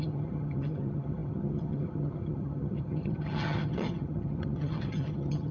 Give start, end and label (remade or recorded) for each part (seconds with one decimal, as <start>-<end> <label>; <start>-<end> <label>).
0.0-5.5 remade